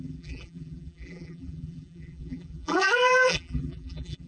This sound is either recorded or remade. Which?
remade